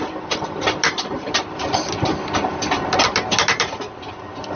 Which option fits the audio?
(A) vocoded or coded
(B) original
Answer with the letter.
B